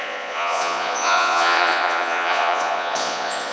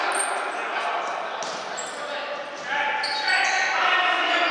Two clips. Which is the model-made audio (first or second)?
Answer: first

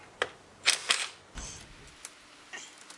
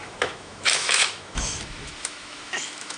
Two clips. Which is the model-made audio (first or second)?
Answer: second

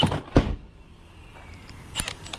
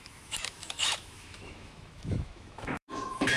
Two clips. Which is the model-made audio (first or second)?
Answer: second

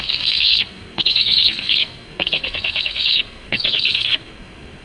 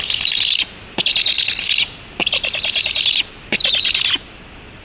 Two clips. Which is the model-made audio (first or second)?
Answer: first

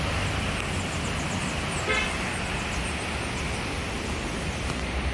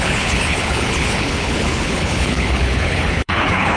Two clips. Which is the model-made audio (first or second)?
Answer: second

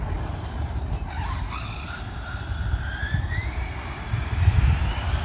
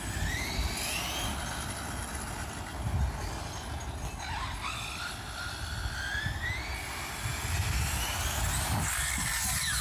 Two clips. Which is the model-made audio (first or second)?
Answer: first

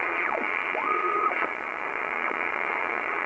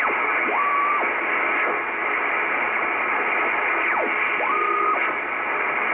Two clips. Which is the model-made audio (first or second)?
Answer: first